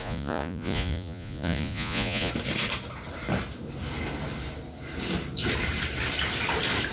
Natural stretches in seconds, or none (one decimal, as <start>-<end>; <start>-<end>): 2.3-6.9